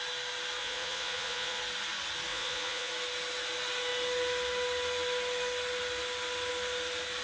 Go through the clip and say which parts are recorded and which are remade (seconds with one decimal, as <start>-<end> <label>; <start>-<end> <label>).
0.0-0.6 recorded; 0.6-1.6 remade; 1.6-2.3 recorded; 2.3-2.9 remade; 2.9-7.2 recorded